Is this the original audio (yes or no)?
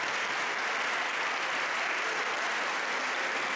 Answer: yes